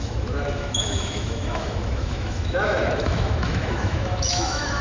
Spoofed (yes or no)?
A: yes